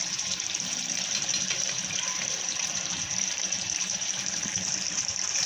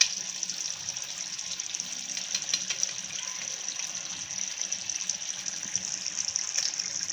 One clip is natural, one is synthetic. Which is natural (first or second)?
second